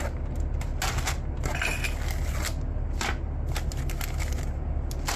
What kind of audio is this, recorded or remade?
recorded